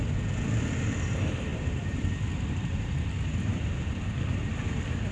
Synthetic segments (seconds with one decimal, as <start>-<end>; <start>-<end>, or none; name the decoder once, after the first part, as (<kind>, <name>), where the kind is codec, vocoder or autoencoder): none